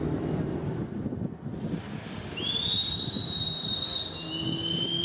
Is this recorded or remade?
recorded